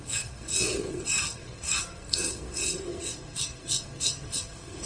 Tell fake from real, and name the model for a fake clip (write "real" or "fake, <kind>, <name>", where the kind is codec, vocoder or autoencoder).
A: fake, codec, SNAC